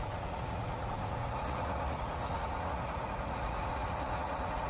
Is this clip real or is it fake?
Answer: fake